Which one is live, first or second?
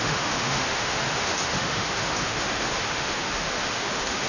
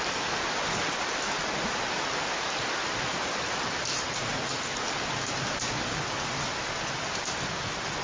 second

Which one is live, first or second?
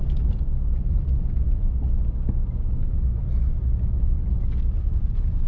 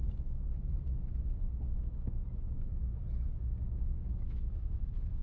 first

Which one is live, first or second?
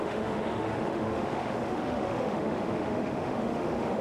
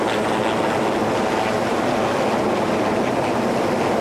second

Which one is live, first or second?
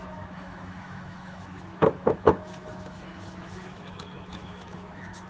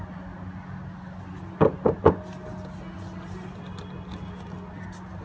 second